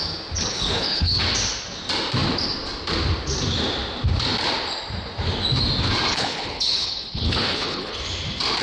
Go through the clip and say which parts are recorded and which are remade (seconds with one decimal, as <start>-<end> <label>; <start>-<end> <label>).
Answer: 0.0-0.5 recorded; 0.5-1.2 remade; 1.2-6.1 recorded; 6.1-7.9 remade; 7.9-8.6 recorded